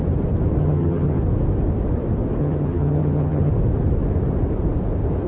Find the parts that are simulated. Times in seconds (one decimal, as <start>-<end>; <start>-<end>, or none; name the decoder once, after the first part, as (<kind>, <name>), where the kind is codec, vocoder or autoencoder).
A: 0.6-1.2 (vocoder, HiFi-GAN); 2.4-3.5